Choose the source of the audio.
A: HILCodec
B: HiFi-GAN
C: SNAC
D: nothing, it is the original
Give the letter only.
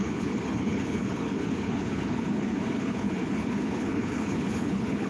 A